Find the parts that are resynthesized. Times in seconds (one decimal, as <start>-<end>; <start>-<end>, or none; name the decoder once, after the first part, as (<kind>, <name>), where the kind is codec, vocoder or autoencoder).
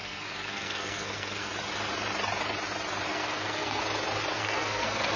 0.0-1.5 (codec, SNAC); 3.1-3.8; 4.3-5.2